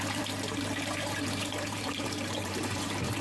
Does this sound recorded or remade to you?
remade